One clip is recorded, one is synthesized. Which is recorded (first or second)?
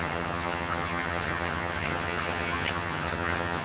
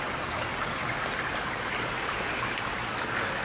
second